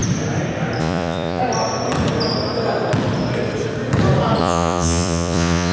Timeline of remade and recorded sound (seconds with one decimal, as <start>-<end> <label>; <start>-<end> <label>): 0.0-0.8 recorded; 0.8-1.4 remade; 1.4-4.4 recorded; 4.4-5.7 remade